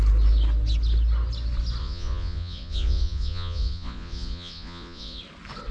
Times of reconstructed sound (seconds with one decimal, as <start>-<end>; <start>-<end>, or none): 1.8-5.2

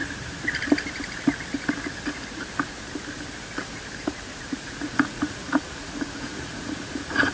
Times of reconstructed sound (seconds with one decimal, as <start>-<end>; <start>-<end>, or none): 4.4-7.3

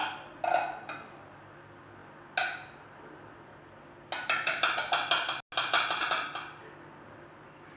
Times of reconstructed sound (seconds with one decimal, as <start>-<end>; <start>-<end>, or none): none